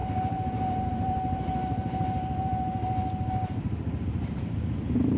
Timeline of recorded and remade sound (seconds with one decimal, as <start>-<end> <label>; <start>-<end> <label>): 0.0-3.0 remade; 3.0-4.6 recorded; 4.6-5.2 remade